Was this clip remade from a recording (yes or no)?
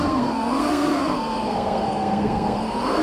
yes